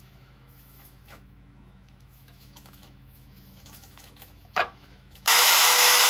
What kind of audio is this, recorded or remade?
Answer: remade